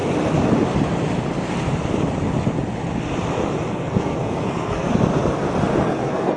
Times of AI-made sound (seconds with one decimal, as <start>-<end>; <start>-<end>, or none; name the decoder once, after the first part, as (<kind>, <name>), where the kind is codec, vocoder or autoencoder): 3.7-4.9 (codec, SNAC); 5.8-6.4